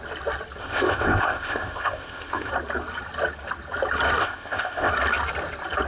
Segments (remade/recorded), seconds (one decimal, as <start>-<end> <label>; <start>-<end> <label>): 0.0-0.6 recorded; 0.6-2.5 remade; 2.5-4.2 recorded; 4.2-4.9 remade; 4.9-5.9 recorded